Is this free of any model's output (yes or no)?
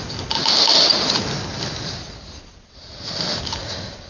yes